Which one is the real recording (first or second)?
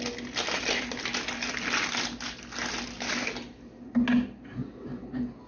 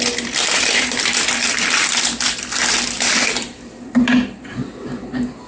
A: first